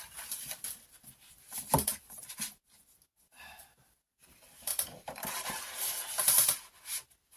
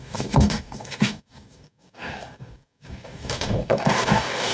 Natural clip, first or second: first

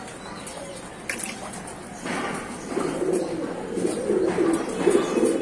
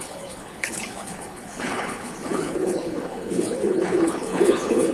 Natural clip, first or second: first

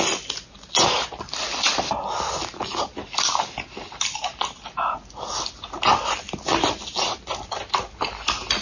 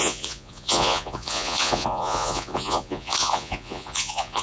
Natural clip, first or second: first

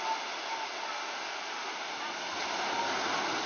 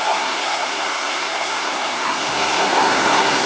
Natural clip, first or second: first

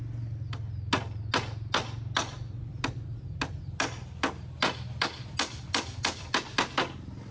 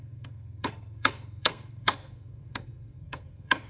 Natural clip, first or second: first